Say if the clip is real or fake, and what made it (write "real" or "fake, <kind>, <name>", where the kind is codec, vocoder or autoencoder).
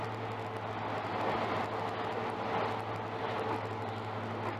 real